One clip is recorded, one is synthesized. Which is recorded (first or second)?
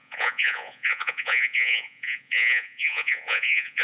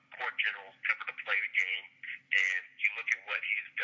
second